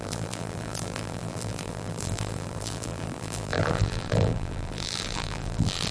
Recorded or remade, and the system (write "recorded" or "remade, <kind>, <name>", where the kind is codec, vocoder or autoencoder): remade, vocoder, BigVGAN v2